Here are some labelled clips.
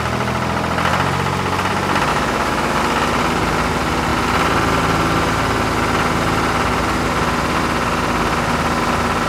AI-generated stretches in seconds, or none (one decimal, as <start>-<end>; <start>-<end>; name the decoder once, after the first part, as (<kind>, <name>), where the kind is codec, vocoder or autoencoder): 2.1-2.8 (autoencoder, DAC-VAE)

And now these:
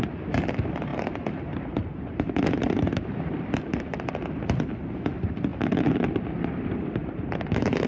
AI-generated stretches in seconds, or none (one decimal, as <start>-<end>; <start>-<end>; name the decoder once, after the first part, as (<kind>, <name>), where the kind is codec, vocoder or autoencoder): 0.9-4.1 (vocoder, BigVGAN v2); 5.5-7.9

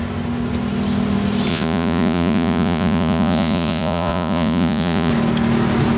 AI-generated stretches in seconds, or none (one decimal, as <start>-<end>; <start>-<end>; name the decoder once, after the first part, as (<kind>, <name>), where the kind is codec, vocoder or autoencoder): 1.5-5.1 (vocoder, Vocos)

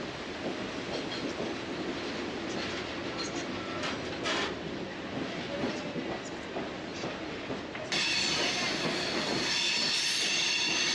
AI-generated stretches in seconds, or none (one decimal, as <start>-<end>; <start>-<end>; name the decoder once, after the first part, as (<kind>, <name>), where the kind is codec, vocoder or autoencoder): none

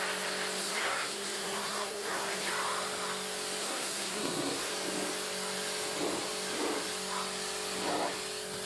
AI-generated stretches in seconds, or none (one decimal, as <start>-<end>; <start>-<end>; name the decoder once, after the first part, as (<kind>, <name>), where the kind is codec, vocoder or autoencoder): 0.6-2.5 (codec, SNAC); 3.6-4.7

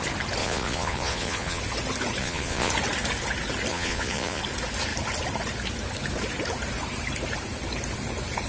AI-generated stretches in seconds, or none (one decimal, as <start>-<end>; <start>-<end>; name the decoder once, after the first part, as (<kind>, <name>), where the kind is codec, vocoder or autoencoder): 0.4-1.6 (vocoder, Vocos); 2.2-2.7; 3.7-4.4

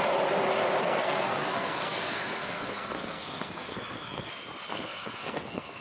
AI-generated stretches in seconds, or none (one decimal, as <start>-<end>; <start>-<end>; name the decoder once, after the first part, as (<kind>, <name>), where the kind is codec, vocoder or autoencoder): 0.8-4.3 (codec, SNAC); 4.7-5.8

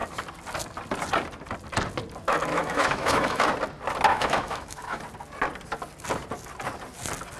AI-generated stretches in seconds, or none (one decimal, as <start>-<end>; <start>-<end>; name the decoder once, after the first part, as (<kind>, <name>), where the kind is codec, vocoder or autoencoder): 2.5-3.4 (autoencoder, DAC-VAE); 4.1-5.0